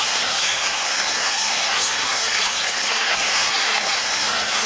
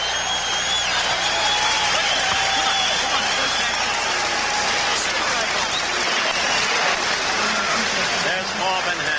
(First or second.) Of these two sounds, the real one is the second